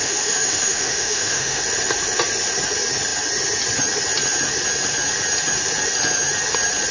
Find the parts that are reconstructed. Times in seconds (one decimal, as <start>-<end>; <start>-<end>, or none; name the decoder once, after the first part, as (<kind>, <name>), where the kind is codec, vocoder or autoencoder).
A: 0.0-1.6 (autoencoder, DAC-VAE)